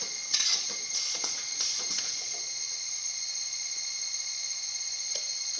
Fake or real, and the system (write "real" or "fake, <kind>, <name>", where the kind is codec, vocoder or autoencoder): fake, vocoder, Vocos